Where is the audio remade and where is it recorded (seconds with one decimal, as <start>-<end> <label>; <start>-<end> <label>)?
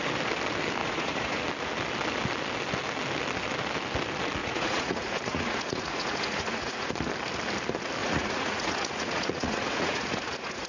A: 0.0-0.8 recorded; 0.8-1.4 remade; 1.4-4.4 recorded; 4.4-6.9 remade; 6.9-8.0 recorded; 8.0-10.7 remade